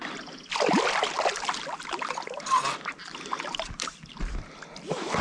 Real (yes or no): yes